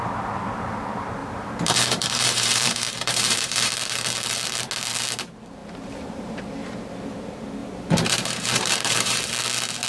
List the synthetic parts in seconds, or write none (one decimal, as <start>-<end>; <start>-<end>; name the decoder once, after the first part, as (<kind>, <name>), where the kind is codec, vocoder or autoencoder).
1.2-3.7 (vocoder, BigVGAN v2); 5.6-6.4; 7.6-9.3